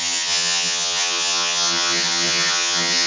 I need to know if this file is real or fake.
fake